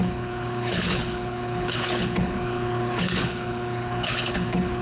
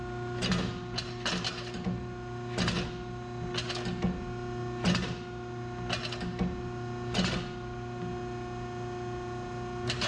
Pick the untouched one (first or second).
second